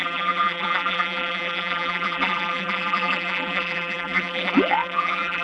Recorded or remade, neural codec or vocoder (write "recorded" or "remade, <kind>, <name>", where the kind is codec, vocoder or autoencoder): remade, vocoder, BigVGAN v2